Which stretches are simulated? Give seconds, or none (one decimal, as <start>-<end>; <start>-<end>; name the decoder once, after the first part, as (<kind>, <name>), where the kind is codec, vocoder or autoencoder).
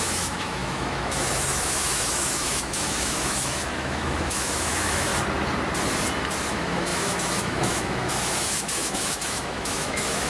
0.0-5.1 (autoencoder, DAC-VAE); 6.5-10.3